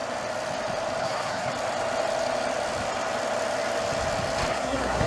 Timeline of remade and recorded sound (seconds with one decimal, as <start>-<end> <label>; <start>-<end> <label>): 0.0-1.0 recorded; 1.0-1.5 remade; 1.5-4.5 recorded; 4.5-5.1 remade